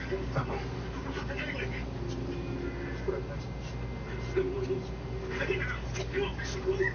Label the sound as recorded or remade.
recorded